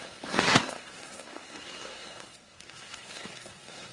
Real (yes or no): no